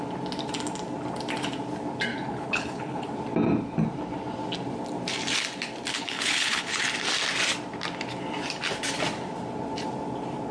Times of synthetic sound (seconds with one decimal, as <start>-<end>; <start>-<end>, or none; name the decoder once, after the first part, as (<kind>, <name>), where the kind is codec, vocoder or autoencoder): 2.1-3.1 (codec, HILCodec); 5.9-6.8

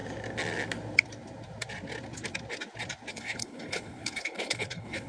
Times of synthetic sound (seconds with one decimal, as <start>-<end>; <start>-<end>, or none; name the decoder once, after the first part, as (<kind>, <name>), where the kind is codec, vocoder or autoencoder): 3.1-5.1 (codec, HILCodec)

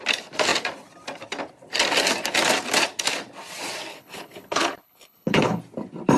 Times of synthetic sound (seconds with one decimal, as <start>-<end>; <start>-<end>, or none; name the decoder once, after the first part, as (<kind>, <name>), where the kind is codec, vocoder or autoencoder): 3.9-5.6 (codec, HILCodec)

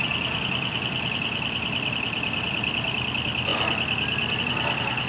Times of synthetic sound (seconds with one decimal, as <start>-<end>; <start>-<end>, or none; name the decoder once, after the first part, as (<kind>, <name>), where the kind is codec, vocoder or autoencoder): none